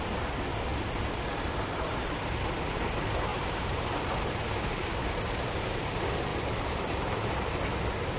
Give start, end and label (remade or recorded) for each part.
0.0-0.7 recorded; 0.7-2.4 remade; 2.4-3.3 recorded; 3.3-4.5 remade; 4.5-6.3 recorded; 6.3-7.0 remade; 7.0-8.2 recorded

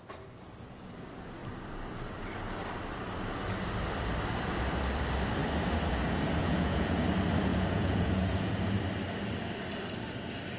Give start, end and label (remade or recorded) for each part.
0.0-6.4 recorded; 6.4-7.0 remade; 7.0-7.5 recorded; 7.5-8.5 remade; 8.5-10.6 recorded

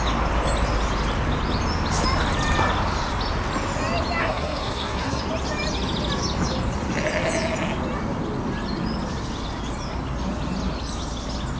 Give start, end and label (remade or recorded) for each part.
0.0-4.2 recorded; 4.2-5.2 remade; 5.2-11.6 recorded

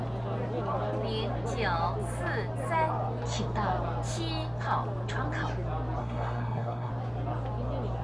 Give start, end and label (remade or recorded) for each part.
0.0-6.0 recorded; 6.0-6.9 remade; 6.9-8.0 recorded